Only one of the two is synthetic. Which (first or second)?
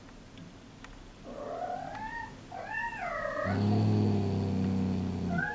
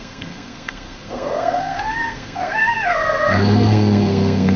second